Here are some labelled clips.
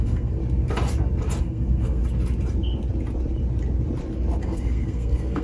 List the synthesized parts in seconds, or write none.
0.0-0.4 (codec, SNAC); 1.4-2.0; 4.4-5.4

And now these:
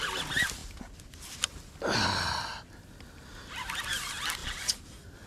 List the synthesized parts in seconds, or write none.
none

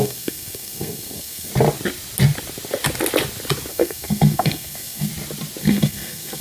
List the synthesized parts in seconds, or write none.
0.0-1.5 (codec, SNAC); 3.7-5.1; 5.6-6.4